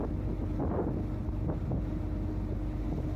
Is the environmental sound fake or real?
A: real